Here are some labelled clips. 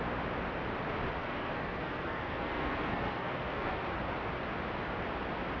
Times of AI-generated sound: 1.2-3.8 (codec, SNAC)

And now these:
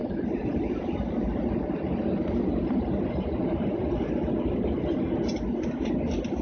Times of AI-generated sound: 0.0-1.4 (vocoder, BigVGAN v2); 1.9-4.1

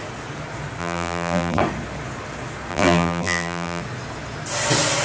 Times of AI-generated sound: 0.8-1.6 (vocoder, BigVGAN v2); 2.7-3.8

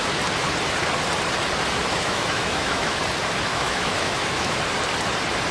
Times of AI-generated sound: 1.9-3.0 (autoencoder, DAC-VAE); 3.5-4.6

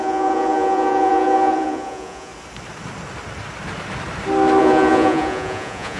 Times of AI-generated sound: 0.0-2.3 (vocoder, Vocos); 4.6-6.0

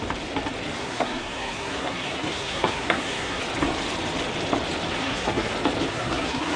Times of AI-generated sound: 0.8-3.4 (codec, SNAC); 5.0-5.5; 5.9-6.6

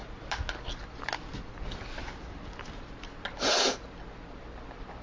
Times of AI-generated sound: none